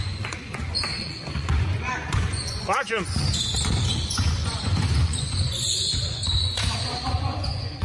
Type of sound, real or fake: fake